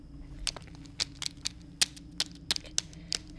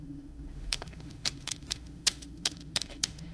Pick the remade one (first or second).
second